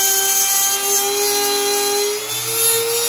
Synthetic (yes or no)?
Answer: no